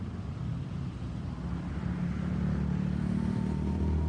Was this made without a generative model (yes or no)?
yes